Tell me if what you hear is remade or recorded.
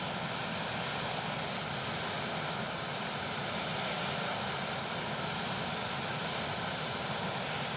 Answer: recorded